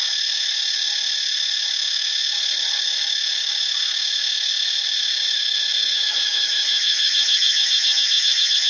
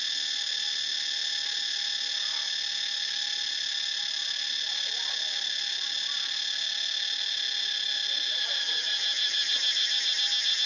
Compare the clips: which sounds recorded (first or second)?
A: second